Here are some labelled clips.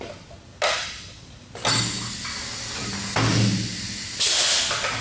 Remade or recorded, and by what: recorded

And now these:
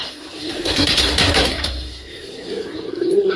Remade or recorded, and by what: remade, codec, SNAC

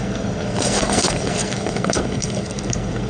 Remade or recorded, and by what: remade, codec, SNAC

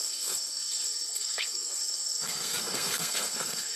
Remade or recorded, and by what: remade, codec, SNAC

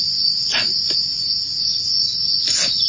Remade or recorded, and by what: recorded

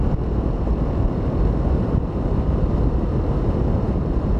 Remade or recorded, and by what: recorded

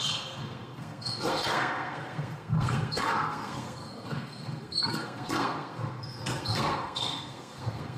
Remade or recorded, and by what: remade, codec, SNAC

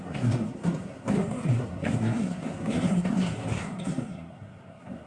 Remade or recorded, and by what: remade, codec, SNAC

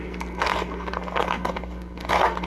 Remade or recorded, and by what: remade, codec, SNAC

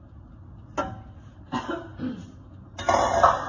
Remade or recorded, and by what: recorded